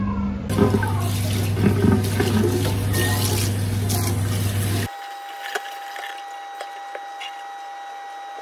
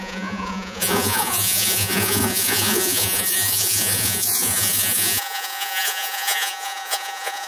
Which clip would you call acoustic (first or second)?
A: first